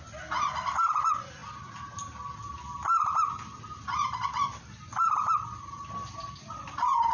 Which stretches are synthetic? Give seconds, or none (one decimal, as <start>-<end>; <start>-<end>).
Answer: none